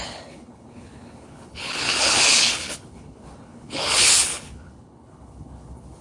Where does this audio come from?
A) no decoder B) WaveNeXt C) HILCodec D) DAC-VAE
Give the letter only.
C